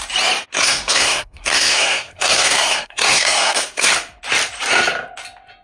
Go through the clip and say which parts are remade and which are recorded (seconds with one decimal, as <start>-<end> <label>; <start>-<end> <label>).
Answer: 0.0-0.5 recorded; 0.5-3.9 remade; 3.9-5.6 recorded